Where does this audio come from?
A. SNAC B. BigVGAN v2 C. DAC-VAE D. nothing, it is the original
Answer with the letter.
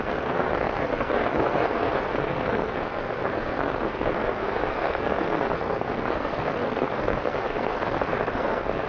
A